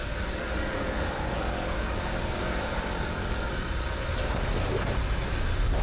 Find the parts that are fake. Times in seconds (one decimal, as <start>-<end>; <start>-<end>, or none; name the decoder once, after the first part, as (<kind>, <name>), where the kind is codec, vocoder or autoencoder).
0.0-3.5 (codec, DAC)